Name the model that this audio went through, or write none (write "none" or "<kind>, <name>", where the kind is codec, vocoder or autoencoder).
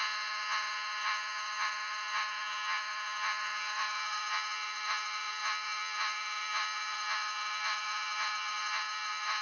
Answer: vocoder, Vocos